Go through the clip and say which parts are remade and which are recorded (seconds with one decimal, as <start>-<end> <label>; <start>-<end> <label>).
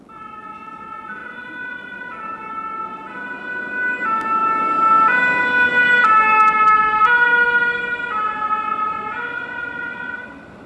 0.0-1.2 recorded; 1.2-2.5 remade; 2.5-4.4 recorded; 4.4-5.2 remade; 5.2-10.7 recorded